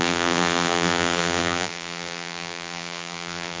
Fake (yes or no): yes